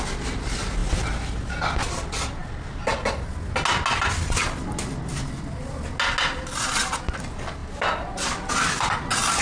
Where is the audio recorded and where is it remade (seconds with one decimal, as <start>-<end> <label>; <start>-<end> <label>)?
0.0-9.4 recorded